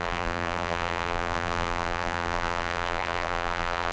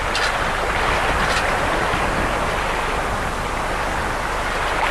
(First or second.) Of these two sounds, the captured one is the second